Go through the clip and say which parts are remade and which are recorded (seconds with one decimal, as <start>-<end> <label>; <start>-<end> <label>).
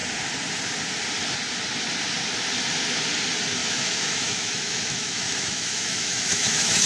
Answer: 0.0-3.6 recorded; 3.6-6.9 remade